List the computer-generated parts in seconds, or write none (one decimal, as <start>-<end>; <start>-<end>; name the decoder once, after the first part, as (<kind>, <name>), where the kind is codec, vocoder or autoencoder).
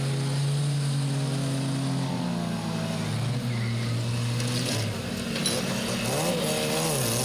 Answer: none